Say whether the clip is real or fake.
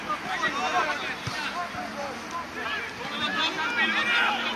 real